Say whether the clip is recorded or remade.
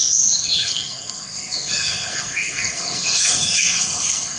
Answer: remade